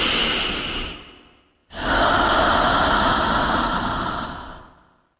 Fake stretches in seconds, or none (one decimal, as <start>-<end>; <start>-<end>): none